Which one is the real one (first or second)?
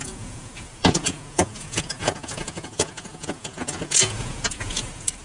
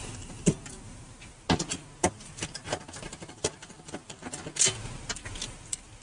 second